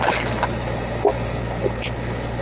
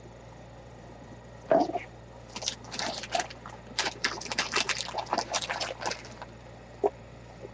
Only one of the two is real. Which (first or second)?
first